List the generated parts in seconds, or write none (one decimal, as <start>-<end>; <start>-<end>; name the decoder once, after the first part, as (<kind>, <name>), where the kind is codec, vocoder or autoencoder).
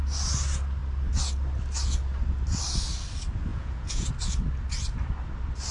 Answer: 3.5-4.1 (vocoder, Vocos)